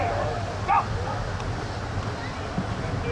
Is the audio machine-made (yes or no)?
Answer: no